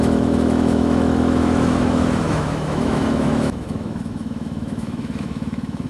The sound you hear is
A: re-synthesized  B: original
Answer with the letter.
A